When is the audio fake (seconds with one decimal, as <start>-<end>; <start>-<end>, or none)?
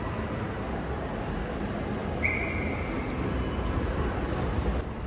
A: none